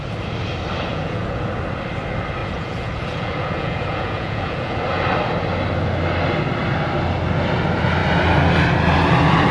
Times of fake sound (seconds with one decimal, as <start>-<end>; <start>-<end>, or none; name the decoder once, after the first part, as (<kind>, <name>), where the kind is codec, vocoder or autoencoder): 0.9-1.4 (vocoder, Vocos); 2.4-4.8